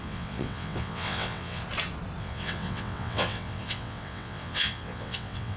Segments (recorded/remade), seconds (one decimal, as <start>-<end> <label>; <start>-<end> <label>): 0.0-1.6 remade; 1.6-2.2 recorded; 2.2-5.6 remade